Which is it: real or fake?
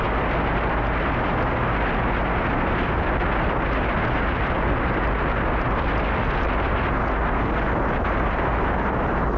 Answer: real